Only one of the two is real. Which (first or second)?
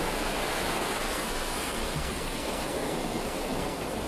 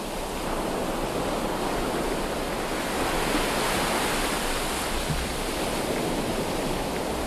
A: second